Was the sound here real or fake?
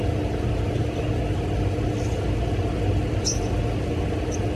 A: real